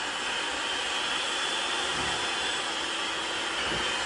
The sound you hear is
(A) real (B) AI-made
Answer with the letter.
A